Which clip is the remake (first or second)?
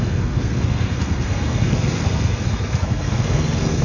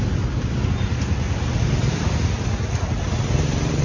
first